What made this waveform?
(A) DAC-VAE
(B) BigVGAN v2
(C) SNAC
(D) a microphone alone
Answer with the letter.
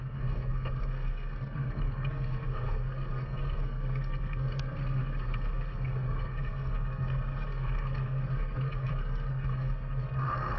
C